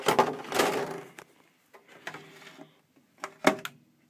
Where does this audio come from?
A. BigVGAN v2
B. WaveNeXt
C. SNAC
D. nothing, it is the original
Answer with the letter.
D